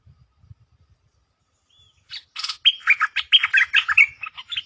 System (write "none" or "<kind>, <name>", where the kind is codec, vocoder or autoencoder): none